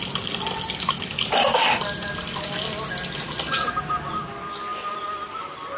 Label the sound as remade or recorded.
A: recorded